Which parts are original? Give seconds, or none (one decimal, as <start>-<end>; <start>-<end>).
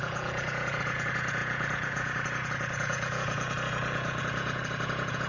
none